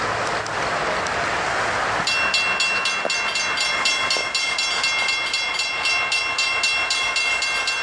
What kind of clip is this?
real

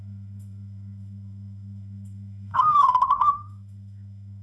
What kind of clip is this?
fake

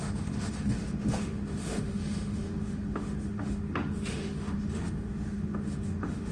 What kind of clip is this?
fake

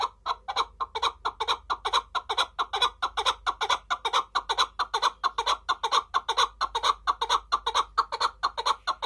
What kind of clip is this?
real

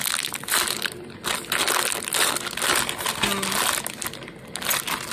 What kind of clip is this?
real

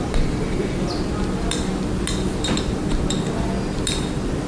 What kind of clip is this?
real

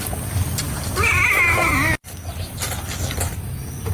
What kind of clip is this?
real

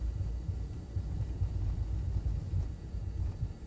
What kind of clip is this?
real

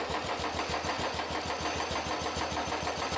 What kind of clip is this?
real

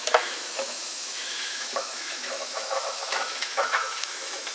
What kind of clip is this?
fake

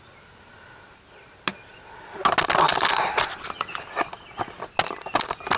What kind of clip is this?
real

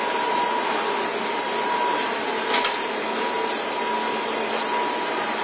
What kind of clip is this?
real